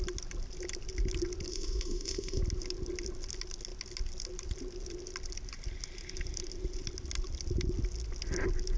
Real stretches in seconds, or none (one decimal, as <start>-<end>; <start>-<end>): 0.0-1.5; 2.4-8.8